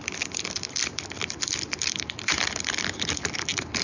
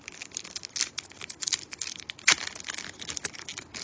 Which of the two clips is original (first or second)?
second